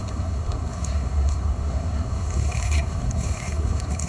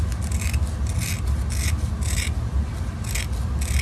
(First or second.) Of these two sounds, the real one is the second